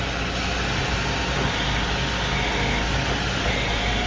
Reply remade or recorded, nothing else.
recorded